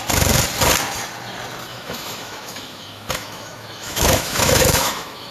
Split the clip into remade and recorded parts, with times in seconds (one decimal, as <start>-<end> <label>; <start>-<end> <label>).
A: 0.0-1.7 recorded; 1.7-5.3 remade